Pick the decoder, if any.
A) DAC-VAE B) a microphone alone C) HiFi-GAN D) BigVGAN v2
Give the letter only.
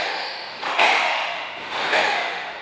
A